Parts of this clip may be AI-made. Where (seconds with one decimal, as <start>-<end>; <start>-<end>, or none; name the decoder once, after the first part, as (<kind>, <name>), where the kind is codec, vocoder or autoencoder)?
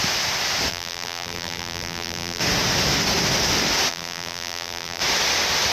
0.7-2.4 (vocoder, BigVGAN v2); 3.9-5.0